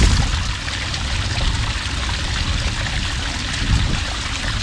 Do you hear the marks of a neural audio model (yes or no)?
no